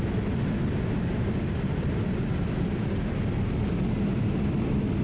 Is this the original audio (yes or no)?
yes